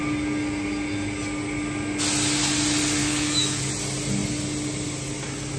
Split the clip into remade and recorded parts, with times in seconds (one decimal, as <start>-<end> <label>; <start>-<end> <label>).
0.0-3.0 recorded; 3.0-3.7 remade; 3.7-5.6 recorded